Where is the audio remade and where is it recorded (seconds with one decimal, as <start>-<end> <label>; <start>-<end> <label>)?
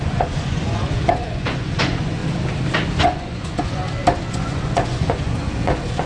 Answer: 0.0-2.2 remade; 2.2-3.0 recorded; 3.0-3.8 remade; 3.8-4.3 recorded; 4.3-6.1 remade